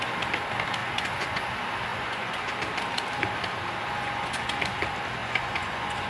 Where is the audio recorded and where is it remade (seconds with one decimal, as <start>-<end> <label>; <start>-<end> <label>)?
0.0-0.8 recorded; 0.8-1.4 remade; 1.4-1.9 recorded; 1.9-2.5 remade; 2.5-3.8 recorded; 3.8-4.8 remade; 4.8-5.2 recorded; 5.2-6.1 remade